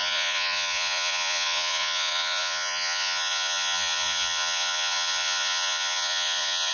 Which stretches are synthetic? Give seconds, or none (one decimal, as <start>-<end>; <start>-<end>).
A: 0.0-6.7